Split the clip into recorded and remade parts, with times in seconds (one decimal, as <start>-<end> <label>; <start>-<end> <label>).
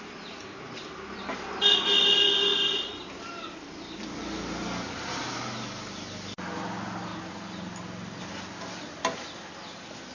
0.0-2.5 recorded; 2.5-4.0 remade; 4.0-10.1 recorded